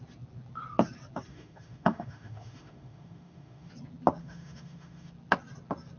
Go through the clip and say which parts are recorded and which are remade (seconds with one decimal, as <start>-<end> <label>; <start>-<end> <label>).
0.0-1.3 recorded; 1.3-3.7 remade; 3.7-4.2 recorded; 4.2-5.1 remade; 5.1-6.0 recorded